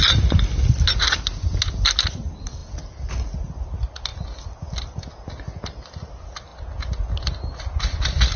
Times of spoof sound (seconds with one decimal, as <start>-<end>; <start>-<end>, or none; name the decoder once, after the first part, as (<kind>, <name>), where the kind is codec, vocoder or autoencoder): none